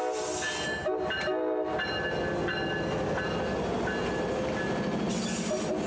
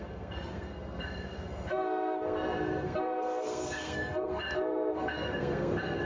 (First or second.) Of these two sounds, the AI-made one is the second